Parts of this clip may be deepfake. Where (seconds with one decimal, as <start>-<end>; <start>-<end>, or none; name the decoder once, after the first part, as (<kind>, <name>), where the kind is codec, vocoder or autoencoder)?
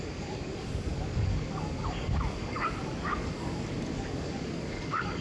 0.0-5.2 (codec, DAC)